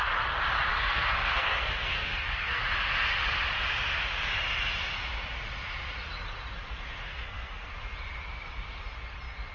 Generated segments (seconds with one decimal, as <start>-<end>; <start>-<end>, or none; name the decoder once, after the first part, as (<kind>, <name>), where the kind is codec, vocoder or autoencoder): 0.7-2.6 (codec, SNAC); 7.1-7.7